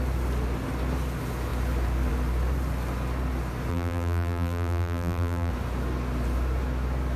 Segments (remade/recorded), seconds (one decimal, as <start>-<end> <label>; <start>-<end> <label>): 0.0-3.7 recorded; 3.7-5.5 remade; 5.5-7.2 recorded